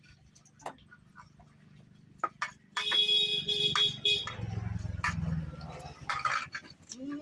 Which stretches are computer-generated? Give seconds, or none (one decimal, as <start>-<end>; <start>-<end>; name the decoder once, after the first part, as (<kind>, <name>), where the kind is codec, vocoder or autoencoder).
none